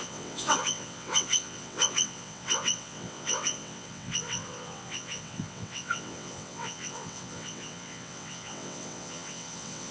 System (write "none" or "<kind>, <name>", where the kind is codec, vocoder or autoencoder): vocoder, WaveNeXt